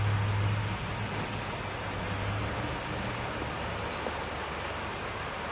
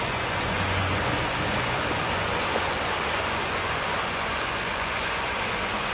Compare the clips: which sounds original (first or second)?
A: first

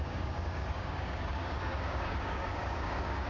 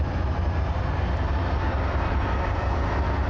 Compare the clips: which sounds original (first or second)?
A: second